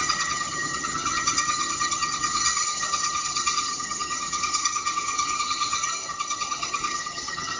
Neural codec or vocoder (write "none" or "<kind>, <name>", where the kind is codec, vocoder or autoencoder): vocoder, HiFi-GAN